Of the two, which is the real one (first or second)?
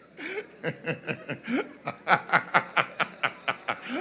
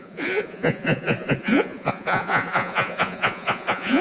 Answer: first